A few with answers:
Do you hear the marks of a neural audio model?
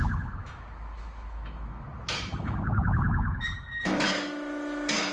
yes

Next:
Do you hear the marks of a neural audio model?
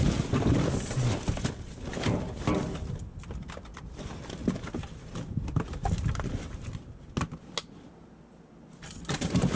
no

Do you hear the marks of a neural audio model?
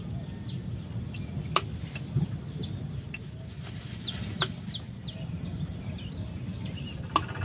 no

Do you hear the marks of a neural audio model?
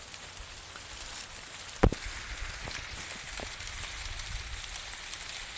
no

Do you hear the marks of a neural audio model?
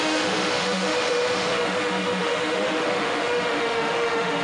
yes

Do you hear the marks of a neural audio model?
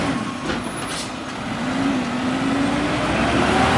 no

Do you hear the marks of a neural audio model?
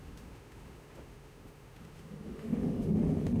yes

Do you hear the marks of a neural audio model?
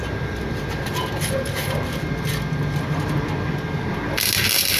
no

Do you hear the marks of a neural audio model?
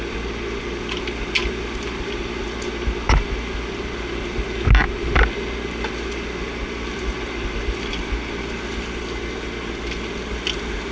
no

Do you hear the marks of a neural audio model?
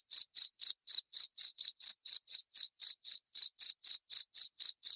no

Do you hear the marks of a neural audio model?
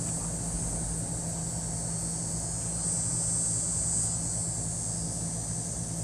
no